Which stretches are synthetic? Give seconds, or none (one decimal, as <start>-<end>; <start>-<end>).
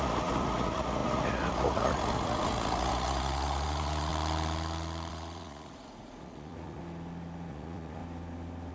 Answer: 0.0-4.1; 5.1-6.8; 7.5-8.0